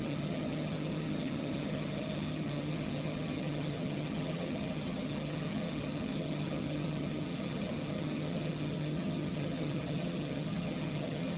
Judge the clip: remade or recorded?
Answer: remade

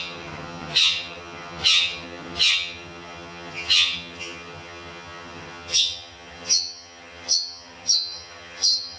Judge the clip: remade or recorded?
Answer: remade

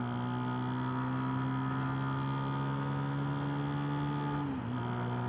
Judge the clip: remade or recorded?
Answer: recorded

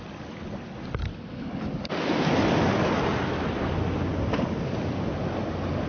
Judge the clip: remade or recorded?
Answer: recorded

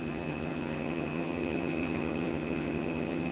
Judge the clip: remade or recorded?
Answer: remade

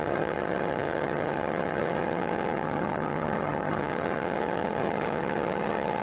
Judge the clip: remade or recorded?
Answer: remade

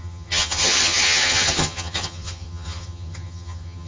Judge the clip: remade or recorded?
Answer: remade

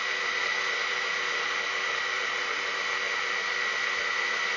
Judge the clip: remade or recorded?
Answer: recorded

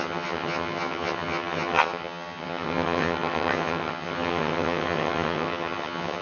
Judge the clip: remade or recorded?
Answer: remade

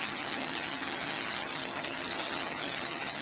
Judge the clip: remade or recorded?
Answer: remade